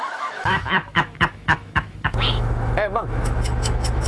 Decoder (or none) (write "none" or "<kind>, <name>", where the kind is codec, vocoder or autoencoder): autoencoder, DAC-VAE